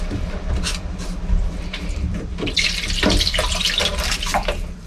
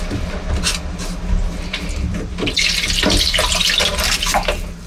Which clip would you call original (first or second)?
second